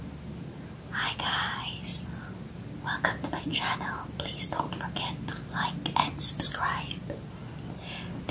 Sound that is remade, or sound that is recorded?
recorded